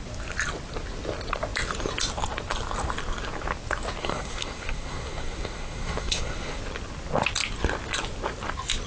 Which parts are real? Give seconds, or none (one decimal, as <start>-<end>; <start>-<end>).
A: 0.0-4.0; 6.6-8.9